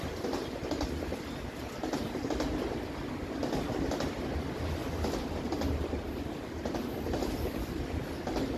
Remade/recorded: recorded